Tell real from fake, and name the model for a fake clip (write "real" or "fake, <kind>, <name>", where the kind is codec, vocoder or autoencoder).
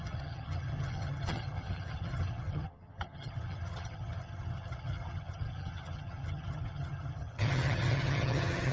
fake, vocoder, HiFi-GAN